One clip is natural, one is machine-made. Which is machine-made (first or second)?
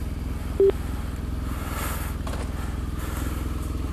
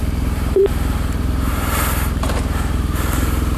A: second